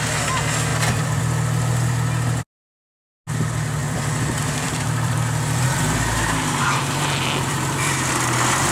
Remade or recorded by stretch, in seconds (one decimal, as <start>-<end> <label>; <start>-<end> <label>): 0.0-0.7 recorded; 0.7-1.2 remade; 1.2-3.8 recorded; 3.8-8.1 remade; 8.1-8.7 recorded